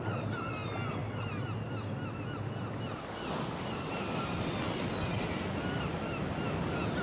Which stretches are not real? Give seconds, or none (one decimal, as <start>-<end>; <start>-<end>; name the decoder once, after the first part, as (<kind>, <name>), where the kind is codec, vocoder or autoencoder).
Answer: 4.3-5.3 (vocoder, WaveNeXt)